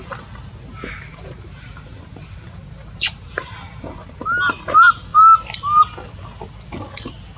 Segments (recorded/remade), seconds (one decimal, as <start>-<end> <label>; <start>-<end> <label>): 0.0-1.1 recorded; 1.1-4.0 remade; 4.0-7.4 recorded